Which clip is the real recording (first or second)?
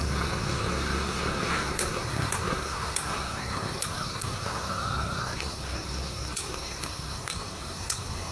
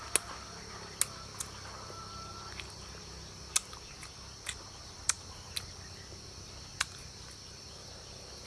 second